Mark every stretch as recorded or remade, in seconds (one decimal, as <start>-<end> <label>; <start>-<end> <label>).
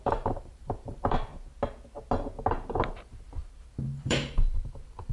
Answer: 0.0-1.3 remade; 1.3-2.9 recorded; 2.9-5.1 remade